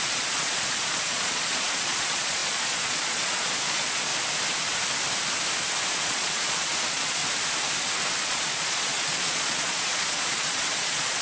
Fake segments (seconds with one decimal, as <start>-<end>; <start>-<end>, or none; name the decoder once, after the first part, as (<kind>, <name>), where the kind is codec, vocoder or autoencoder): 0.0-4.1 (vocoder, Vocos); 5.9-7.2; 8.2-11.2